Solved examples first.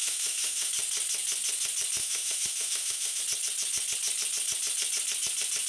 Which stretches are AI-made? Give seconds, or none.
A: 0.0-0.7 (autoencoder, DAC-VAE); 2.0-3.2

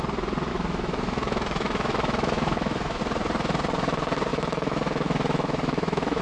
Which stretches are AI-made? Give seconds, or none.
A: 0.5-3.0 (autoencoder, DAC-VAE); 4.3-6.2

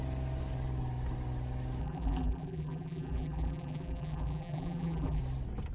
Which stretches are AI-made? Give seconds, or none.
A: 1.8-5.2 (vocoder, BigVGAN v2)

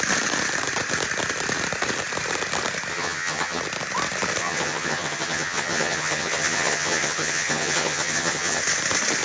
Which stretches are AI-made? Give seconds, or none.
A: 2.9-3.6 (vocoder, HiFi-GAN); 4.4-8.6